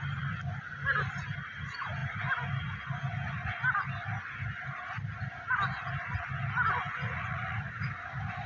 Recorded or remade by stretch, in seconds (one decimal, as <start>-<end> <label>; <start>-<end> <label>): 0.0-7.0 recorded; 7.0-7.9 remade; 7.9-8.5 recorded